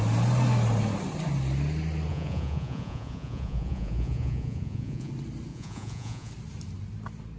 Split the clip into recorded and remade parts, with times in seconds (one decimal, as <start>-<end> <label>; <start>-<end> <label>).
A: 0.0-2.1 recorded; 2.1-5.1 remade; 5.1-5.5 recorded; 5.5-6.3 remade; 6.3-7.4 recorded